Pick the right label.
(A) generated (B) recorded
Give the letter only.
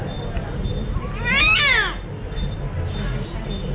B